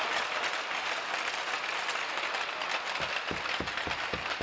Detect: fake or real real